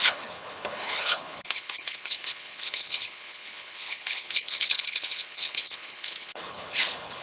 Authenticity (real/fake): fake